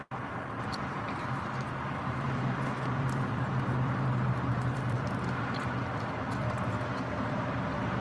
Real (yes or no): no